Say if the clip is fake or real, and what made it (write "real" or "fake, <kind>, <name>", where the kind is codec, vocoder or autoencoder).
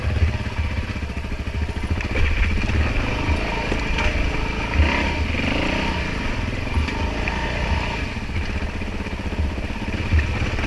real